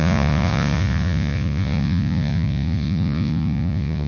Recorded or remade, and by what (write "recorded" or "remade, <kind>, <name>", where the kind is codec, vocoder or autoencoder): remade, vocoder, Vocos